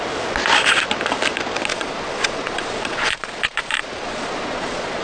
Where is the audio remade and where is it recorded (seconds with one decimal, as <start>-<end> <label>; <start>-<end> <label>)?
0.0-1.7 recorded; 1.7-5.0 remade